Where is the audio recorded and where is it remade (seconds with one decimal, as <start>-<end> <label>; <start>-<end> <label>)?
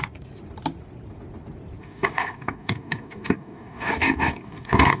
0.0-1.8 recorded; 1.8-5.0 remade